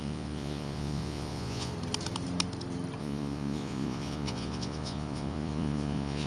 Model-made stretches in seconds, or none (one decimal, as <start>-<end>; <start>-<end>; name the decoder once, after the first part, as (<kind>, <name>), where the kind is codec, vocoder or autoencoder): 0.0-1.7 (vocoder, Vocos); 3.0-6.3